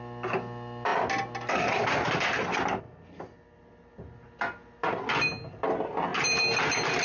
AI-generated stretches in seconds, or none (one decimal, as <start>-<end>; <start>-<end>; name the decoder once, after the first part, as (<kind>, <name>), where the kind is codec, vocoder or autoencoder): none